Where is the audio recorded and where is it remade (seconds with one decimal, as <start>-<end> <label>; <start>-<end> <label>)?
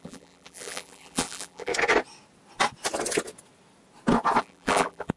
0.0-1.7 remade; 1.7-4.4 recorded; 4.4-5.2 remade